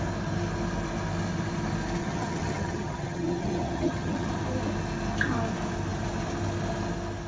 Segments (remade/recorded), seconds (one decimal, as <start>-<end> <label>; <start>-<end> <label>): 0.0-2.0 recorded; 2.0-4.3 remade; 4.3-7.3 recorded

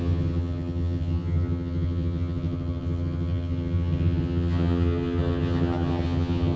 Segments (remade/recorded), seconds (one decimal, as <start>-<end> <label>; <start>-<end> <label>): 0.0-6.6 remade

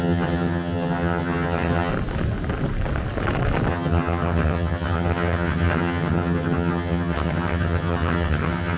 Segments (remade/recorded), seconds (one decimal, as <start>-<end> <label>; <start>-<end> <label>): 0.0-1.9 remade; 1.9-3.7 recorded; 3.7-8.8 remade

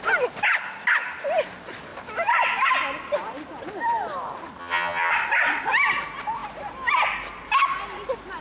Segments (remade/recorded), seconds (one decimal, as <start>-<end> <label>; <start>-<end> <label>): 0.0-4.6 recorded; 4.6-5.1 remade; 5.1-8.4 recorded

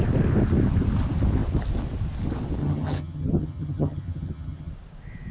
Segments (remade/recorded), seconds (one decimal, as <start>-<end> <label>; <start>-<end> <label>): 0.0-2.6 recorded; 2.6-4.7 remade; 4.7-5.3 recorded

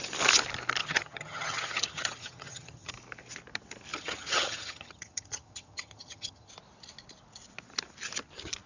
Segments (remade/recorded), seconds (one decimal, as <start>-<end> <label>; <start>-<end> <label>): 0.0-0.8 recorded; 0.8-2.9 remade; 2.9-3.9 recorded; 3.9-6.5 remade; 6.5-8.7 recorded

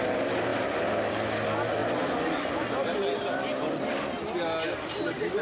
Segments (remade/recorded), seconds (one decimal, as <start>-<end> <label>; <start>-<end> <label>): 0.0-5.4 recorded